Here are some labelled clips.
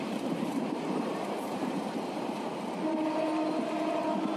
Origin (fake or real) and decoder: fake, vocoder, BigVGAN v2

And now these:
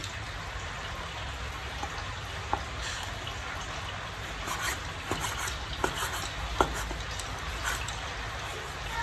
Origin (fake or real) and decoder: real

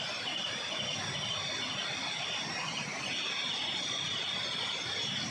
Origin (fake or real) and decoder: real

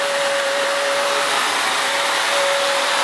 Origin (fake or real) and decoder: fake, vocoder, BigVGAN v2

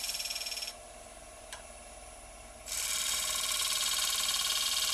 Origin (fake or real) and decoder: fake, vocoder, BigVGAN v2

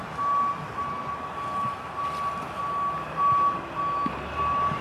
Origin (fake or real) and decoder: real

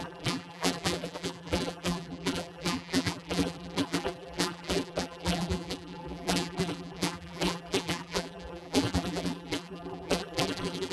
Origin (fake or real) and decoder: fake, vocoder, BigVGAN v2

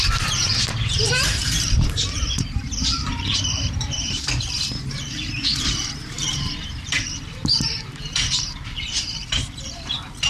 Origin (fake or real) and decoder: fake, vocoder, BigVGAN v2